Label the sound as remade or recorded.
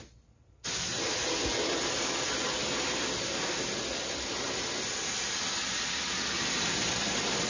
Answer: recorded